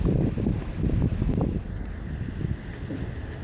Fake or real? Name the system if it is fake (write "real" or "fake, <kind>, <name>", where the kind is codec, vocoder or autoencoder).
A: real